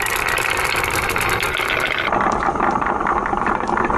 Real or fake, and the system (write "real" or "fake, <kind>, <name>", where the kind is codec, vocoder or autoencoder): real